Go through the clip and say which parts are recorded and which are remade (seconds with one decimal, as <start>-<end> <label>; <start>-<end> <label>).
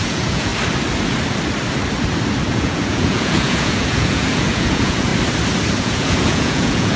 0.0-0.5 remade; 0.5-2.5 recorded; 2.5-5.1 remade; 5.1-5.8 recorded; 5.8-7.0 remade